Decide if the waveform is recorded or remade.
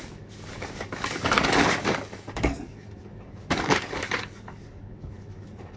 remade